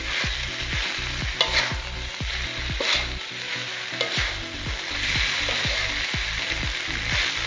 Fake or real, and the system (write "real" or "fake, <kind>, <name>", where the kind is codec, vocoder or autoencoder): real